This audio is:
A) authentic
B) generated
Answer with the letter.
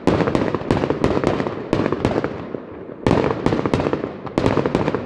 A